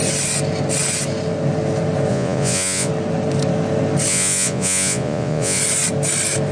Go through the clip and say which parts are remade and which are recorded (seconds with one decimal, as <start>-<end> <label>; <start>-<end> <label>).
0.0-2.1 recorded; 2.1-2.9 remade; 2.9-4.1 recorded; 4.1-5.6 remade; 5.6-6.5 recorded